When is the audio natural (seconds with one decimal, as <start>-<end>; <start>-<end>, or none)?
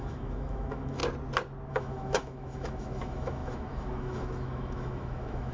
1.0-1.7